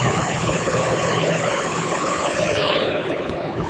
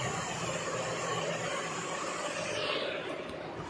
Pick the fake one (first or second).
first